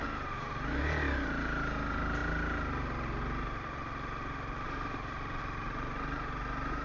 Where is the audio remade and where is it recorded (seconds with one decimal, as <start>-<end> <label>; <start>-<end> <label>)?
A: 0.0-6.8 recorded